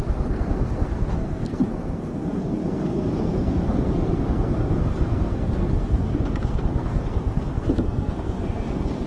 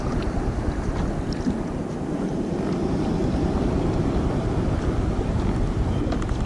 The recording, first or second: second